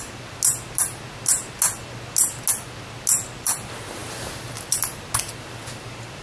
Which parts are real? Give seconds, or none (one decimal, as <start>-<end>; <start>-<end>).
0.0-6.2